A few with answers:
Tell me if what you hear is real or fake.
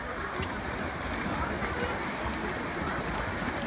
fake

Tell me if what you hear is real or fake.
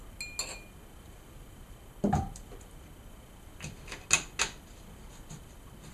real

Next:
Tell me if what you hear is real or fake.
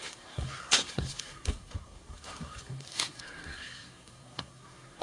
fake